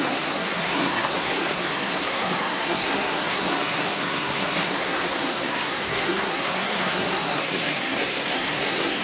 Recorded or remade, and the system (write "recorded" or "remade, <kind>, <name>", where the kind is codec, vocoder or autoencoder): remade, codec, SNAC